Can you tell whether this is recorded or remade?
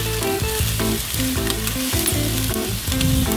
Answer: recorded